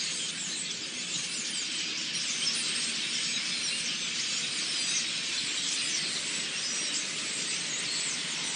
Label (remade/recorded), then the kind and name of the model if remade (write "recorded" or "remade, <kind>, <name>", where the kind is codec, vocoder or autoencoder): recorded